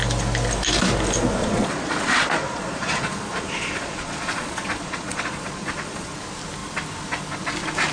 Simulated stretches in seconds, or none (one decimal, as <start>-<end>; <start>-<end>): 1.4-6.1